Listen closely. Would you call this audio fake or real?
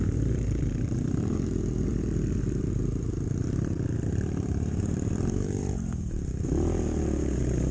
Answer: fake